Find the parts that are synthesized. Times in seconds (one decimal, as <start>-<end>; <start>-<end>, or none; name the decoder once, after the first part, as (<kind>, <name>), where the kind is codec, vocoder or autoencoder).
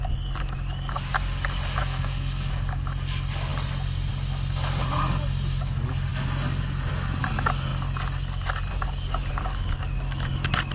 1.8-2.5 (codec, SNAC)